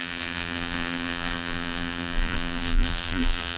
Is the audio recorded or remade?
remade